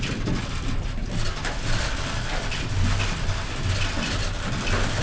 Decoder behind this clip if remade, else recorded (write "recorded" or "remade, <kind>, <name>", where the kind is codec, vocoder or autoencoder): recorded